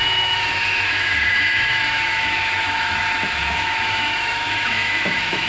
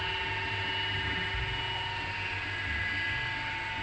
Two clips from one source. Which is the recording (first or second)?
second